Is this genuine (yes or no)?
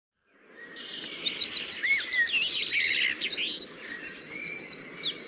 yes